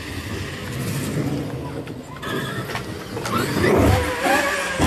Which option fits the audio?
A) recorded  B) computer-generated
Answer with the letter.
A